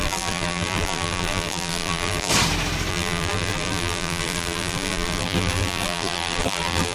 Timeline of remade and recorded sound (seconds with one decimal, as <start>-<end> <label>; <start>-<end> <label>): 0.0-2.3 remade; 2.3-2.9 recorded; 2.9-6.9 remade